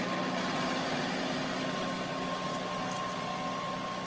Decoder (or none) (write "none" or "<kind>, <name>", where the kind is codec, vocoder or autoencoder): none